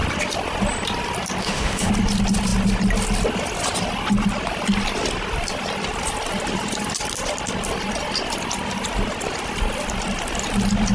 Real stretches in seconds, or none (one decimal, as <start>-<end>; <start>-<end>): 0.0-1.4; 1.9-10.9